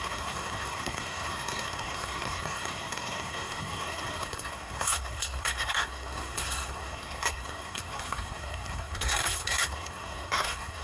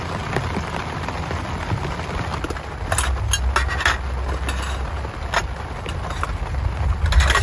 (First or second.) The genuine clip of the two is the second